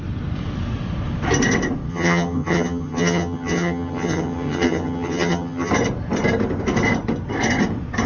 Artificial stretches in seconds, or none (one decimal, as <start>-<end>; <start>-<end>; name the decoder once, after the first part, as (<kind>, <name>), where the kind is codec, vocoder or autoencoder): 1.9-5.7 (vocoder, HiFi-GAN)